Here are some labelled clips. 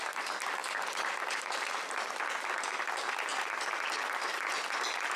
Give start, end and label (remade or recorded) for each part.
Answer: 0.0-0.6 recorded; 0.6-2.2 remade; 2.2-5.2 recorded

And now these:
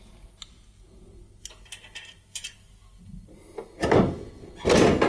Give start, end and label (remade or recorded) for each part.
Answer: 0.0-5.1 recorded

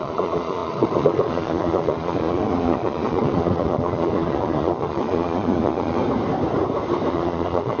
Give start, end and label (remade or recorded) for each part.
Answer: 0.0-6.0 remade; 6.0-7.1 recorded; 7.1-7.8 remade

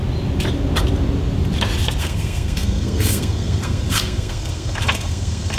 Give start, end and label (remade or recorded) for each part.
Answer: 0.0-2.0 recorded; 2.0-5.6 remade

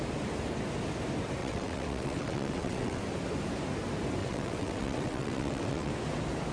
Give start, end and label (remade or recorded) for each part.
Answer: 0.0-1.4 recorded; 1.4-3.0 remade; 3.0-4.2 recorded; 4.2-5.9 remade; 5.9-6.5 recorded

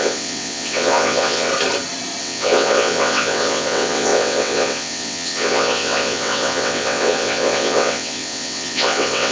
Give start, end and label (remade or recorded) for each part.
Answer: 0.0-1.5 remade; 1.5-2.2 recorded; 2.2-9.3 remade

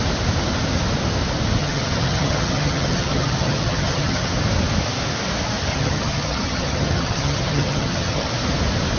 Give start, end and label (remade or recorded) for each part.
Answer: 0.0-1.6 recorded; 1.6-4.3 remade; 4.3-5.7 recorded; 5.7-8.3 remade; 8.3-9.0 recorded